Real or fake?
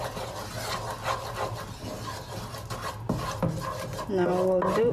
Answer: real